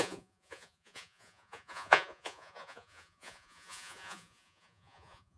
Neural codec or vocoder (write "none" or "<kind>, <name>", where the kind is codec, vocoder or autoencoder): vocoder, Vocos